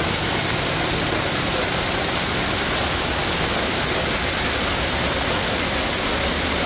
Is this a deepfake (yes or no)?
no